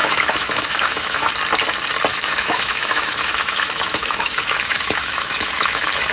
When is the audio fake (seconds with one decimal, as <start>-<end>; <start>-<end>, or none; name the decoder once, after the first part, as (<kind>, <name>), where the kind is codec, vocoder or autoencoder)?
0.0-1.3 (autoencoder, DAC-VAE); 2.1-6.1